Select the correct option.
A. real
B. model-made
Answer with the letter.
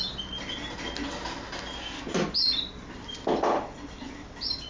A